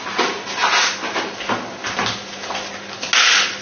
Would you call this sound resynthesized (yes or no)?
no